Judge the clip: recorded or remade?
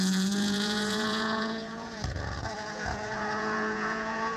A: remade